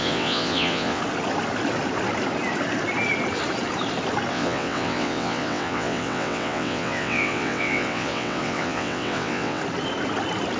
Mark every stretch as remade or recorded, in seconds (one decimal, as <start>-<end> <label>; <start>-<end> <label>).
0.0-1.0 remade; 1.0-4.3 recorded; 4.3-9.6 remade; 9.6-10.6 recorded